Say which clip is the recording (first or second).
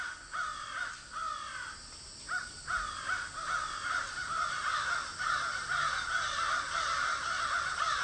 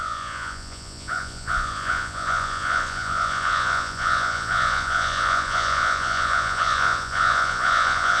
first